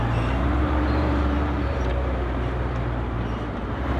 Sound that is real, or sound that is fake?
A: fake